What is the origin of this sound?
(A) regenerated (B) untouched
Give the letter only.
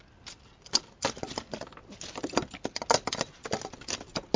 B